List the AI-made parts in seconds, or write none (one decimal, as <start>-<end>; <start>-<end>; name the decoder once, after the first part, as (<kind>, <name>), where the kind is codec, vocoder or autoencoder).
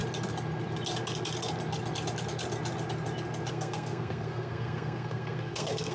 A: 3.5-5.9 (codec, SNAC)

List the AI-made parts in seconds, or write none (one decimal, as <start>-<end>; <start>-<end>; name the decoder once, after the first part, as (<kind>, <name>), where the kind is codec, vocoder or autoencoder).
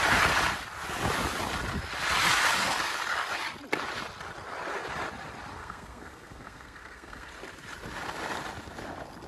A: 5.6-7.3 (codec, SNAC)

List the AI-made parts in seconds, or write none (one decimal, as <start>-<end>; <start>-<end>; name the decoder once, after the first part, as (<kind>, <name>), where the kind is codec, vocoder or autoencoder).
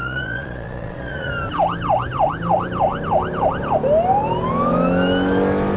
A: 0.0-1.3 (vocoder, Vocos)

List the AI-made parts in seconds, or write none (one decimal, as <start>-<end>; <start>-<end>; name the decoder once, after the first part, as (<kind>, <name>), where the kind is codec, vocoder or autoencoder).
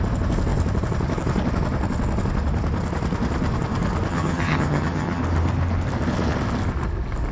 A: 4.1-5.2 (vocoder, HiFi-GAN)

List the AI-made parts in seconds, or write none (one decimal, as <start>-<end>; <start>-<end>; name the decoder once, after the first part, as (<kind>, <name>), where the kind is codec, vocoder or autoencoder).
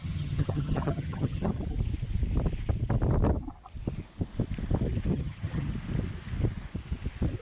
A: 0.0-1.6 (vocoder, HiFi-GAN); 5.1-5.7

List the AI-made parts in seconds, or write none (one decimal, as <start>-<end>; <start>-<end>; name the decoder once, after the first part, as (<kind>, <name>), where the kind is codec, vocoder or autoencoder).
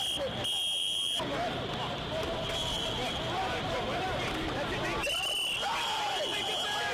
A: 0.8-4.3 (vocoder, BigVGAN v2); 5.7-6.5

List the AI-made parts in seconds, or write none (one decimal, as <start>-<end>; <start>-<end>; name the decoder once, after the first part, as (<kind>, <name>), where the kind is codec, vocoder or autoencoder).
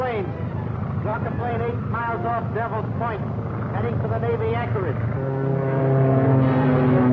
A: 1.1-1.7 (vocoder, BigVGAN v2)